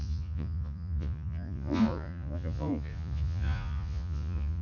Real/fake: fake